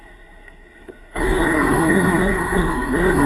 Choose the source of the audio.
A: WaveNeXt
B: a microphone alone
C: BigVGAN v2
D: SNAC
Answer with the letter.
D